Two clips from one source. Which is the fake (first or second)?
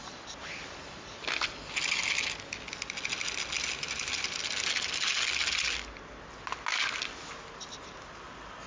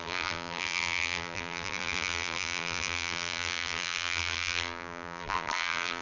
second